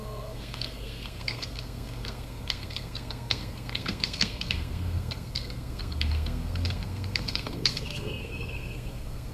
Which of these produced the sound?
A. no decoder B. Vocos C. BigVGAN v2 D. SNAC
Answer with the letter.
D